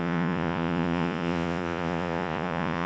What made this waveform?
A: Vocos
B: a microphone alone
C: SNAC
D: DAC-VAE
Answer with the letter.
A